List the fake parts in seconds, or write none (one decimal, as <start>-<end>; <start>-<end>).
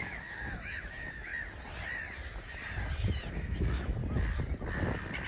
0.0-1.3; 3.3-4.0